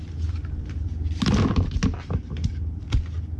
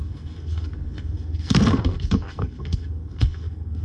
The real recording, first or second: first